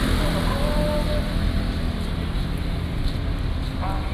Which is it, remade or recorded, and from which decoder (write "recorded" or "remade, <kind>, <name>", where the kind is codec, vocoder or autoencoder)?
recorded